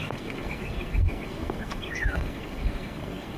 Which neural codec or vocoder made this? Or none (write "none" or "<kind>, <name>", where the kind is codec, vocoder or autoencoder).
codec, SNAC